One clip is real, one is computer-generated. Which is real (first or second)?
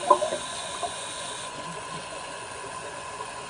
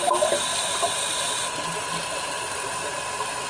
second